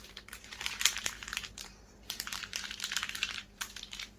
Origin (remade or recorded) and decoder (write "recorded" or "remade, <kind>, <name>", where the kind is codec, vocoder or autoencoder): remade, vocoder, BigVGAN v2